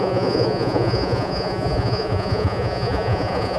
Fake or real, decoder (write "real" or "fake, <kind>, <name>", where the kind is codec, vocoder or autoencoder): fake, vocoder, Vocos